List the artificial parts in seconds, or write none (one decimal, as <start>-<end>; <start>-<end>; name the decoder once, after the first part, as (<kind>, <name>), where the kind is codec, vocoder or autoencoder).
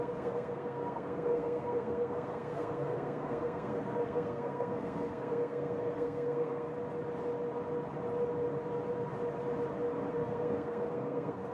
0.0-6.7 (codec, SNAC); 10.1-11.5